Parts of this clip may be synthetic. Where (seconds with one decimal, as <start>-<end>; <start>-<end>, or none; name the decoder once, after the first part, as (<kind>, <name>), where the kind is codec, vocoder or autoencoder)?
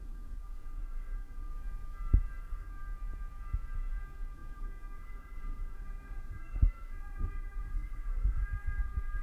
0.0-1.5 (codec, SNAC); 2.4-2.8; 4.0-9.2